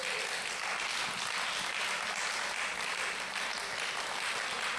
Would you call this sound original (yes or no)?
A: yes